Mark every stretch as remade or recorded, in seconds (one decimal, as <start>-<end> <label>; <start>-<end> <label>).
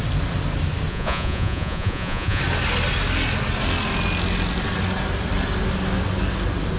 0.0-0.9 recorded; 0.9-2.4 remade; 2.4-6.8 recorded